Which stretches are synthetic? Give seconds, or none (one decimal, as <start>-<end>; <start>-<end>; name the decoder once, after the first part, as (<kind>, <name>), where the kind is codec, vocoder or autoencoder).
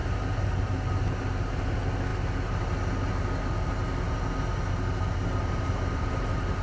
0.0-1.3 (vocoder, BigVGAN v2); 5.4-6.6